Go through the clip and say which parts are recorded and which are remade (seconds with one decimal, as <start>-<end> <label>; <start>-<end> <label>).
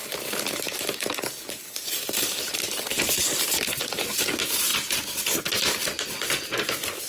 0.0-4.3 remade; 4.3-7.1 recorded